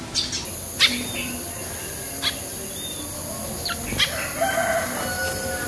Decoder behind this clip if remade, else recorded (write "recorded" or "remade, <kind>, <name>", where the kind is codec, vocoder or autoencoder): recorded